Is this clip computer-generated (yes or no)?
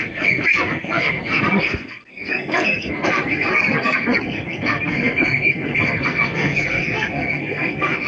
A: yes